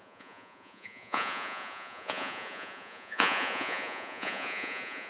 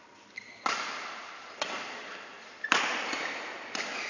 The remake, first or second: first